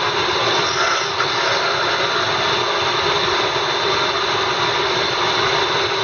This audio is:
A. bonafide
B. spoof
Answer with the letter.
A